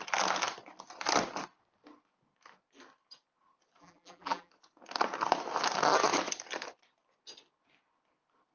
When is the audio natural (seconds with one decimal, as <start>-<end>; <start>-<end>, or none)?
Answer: 0.0-3.8; 4.5-8.5